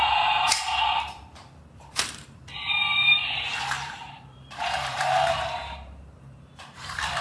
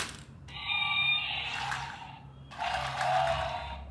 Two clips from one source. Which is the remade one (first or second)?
first